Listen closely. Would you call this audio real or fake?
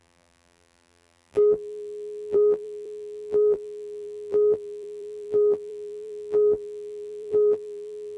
fake